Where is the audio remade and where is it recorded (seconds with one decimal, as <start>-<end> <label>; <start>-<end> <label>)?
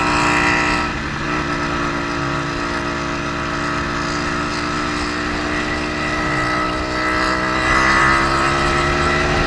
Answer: 0.0-9.5 recorded